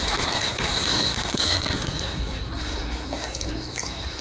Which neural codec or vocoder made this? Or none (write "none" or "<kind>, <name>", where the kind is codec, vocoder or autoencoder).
codec, SNAC